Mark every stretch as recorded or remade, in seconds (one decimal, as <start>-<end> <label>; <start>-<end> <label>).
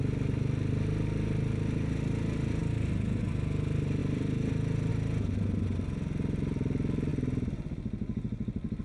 0.0-4.0 recorded; 4.0-4.9 remade; 4.9-8.8 recorded